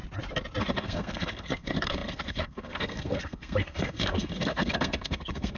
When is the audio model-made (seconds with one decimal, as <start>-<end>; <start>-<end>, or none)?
0.6-5.6